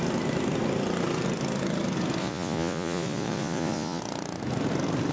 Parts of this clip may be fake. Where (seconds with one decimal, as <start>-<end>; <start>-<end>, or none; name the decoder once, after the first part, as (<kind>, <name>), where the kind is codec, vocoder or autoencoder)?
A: 2.2-4.0 (vocoder, Vocos)